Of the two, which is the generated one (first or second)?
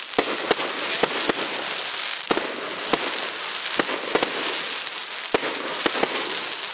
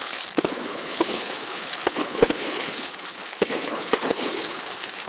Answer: second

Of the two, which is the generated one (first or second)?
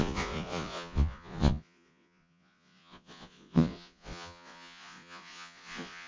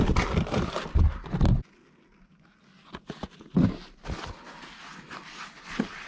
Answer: first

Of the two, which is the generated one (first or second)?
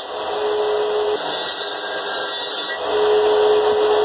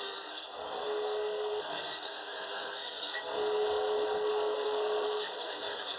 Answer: second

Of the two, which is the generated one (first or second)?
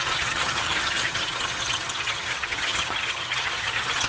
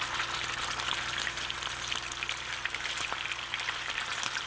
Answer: first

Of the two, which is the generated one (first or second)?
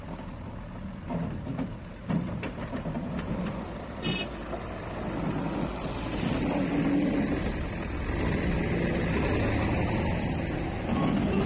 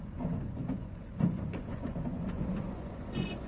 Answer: second